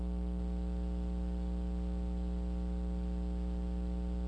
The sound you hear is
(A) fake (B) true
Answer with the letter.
B